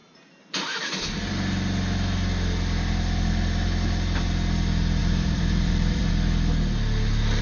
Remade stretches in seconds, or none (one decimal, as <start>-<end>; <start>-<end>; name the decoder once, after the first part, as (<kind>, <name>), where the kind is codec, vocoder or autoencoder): 0.0-0.8 (vocoder, BigVGAN v2); 5.0-6.1